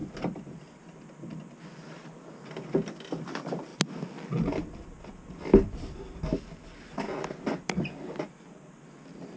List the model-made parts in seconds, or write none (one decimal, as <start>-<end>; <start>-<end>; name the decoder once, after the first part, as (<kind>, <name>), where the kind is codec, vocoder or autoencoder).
none